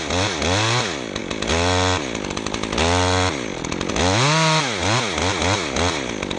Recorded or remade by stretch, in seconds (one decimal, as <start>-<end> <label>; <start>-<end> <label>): 0.0-6.4 recorded